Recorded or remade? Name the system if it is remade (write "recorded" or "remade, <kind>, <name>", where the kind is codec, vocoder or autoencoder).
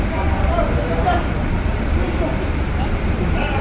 remade, vocoder, BigVGAN v2